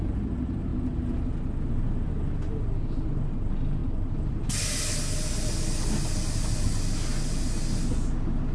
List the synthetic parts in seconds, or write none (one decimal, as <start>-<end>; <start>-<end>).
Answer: none